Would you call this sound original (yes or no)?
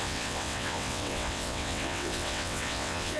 no